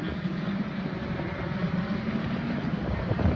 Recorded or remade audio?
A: remade